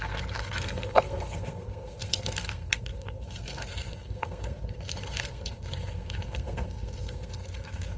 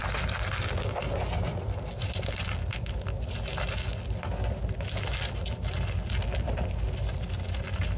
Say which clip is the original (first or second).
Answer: second